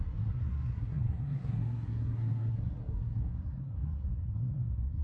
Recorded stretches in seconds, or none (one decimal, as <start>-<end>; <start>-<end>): none